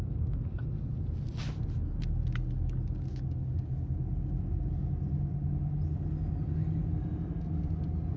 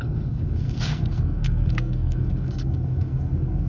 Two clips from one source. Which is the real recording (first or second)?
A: first